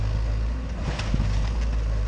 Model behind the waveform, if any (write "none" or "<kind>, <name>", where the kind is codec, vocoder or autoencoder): none